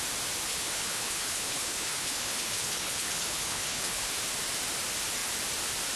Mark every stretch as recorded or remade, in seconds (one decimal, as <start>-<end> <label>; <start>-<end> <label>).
0.0-0.5 recorded; 0.5-4.1 remade; 4.1-6.0 recorded